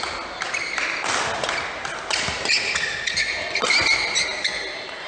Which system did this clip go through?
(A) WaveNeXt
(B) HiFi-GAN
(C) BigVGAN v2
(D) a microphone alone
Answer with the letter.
D